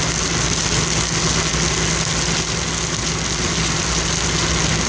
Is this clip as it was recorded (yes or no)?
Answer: yes